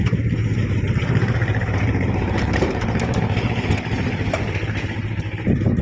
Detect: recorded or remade remade